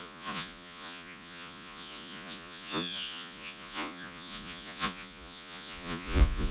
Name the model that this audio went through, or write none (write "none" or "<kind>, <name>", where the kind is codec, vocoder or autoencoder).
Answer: vocoder, Vocos